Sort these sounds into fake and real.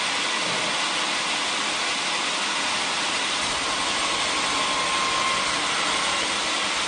real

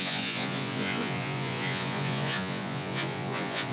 fake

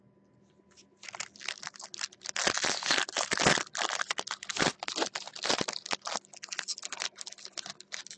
real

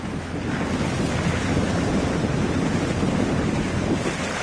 real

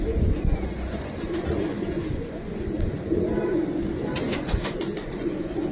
fake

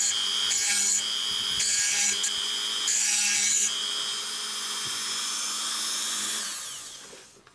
fake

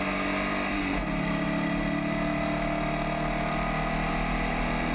real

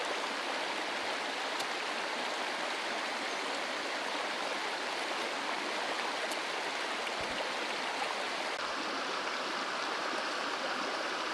real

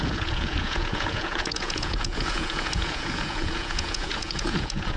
fake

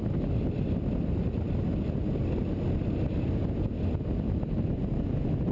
real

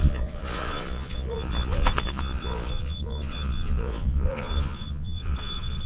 fake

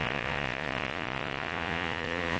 fake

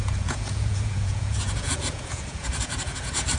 fake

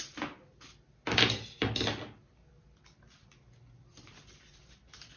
real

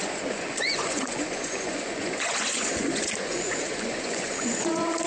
fake